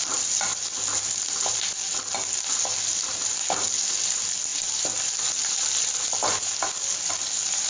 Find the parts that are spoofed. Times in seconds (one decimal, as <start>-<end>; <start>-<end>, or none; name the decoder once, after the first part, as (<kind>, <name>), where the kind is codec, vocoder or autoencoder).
none